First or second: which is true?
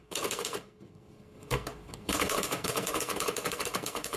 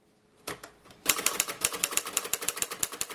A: second